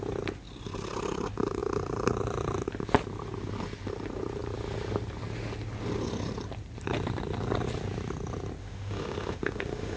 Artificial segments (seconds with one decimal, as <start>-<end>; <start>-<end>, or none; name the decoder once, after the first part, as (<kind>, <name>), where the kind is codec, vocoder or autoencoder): 8.6-10.0 (autoencoder, DAC-VAE)